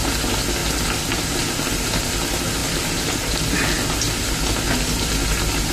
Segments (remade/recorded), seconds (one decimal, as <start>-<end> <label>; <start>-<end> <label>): 0.0-5.7 recorded